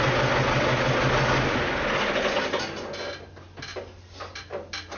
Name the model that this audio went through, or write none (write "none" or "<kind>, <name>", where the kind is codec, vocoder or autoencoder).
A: none